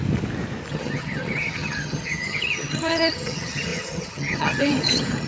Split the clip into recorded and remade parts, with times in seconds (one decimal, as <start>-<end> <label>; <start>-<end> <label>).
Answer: 0.0-0.7 recorded; 0.7-5.3 remade